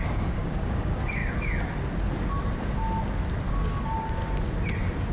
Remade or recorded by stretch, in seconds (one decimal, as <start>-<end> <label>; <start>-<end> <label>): 0.0-1.2 remade; 1.2-3.5 recorded; 3.5-4.2 remade; 4.2-5.1 recorded